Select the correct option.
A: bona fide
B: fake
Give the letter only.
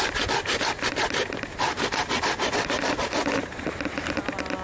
A